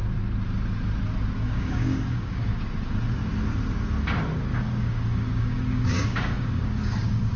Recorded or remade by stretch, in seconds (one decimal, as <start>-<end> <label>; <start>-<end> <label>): 0.0-1.4 recorded; 1.4-2.5 remade; 2.5-4.5 recorded; 4.5-7.4 remade